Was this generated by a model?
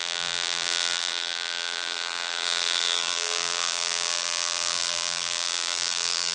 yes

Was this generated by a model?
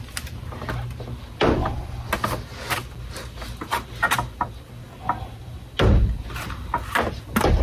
no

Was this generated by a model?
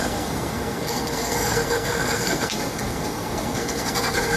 yes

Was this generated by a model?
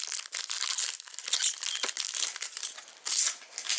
no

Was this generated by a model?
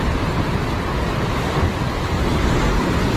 no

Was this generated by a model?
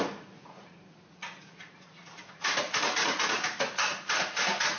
yes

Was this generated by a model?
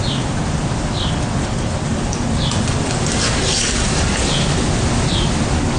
no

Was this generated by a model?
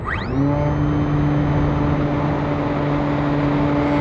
no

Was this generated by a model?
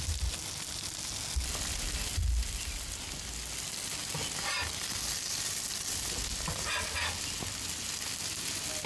no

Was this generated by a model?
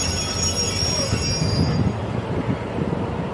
no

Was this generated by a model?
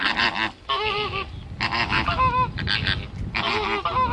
no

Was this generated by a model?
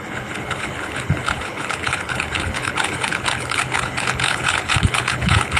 yes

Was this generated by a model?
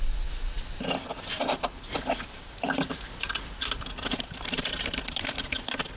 no